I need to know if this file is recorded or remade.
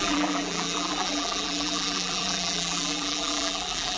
remade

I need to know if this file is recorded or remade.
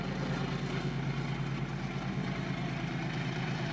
recorded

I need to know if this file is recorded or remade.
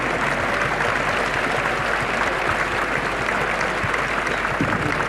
recorded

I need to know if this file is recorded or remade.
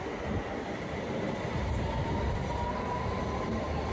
recorded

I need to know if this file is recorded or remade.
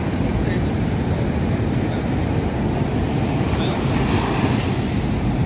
recorded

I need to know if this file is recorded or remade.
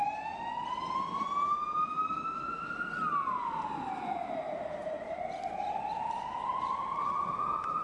recorded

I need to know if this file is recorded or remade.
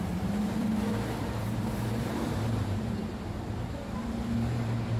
remade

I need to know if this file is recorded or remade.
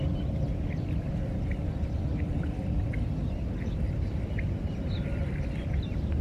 remade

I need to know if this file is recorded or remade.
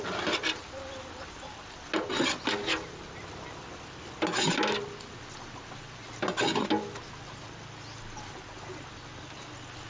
recorded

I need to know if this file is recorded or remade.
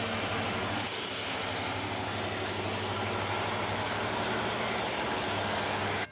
recorded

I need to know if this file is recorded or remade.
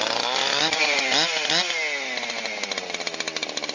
recorded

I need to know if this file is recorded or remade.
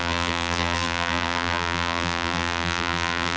remade